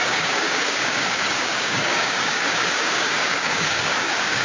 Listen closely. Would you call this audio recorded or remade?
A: remade